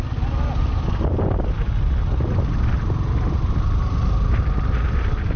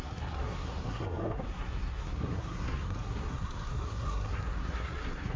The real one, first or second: first